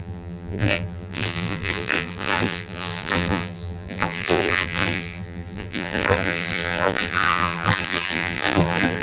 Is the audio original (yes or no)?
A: no